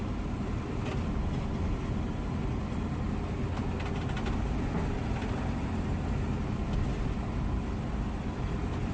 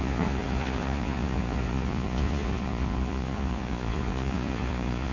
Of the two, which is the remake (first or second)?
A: second